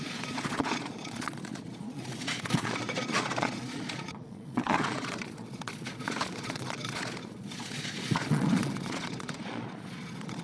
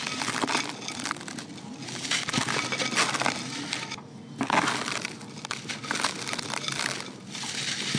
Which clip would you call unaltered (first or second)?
second